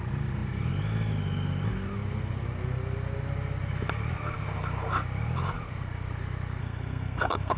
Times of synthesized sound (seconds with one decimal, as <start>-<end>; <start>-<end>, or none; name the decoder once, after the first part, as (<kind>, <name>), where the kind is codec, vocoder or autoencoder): 6.6-7.6 (codec, SNAC)